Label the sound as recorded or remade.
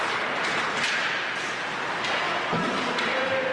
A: recorded